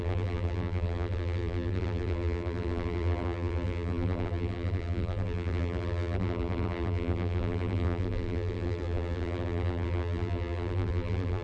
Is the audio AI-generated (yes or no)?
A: yes